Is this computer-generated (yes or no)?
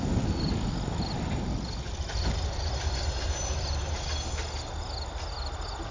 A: no